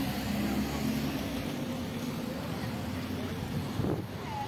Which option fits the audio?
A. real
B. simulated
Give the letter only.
A